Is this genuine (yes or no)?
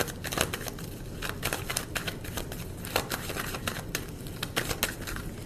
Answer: yes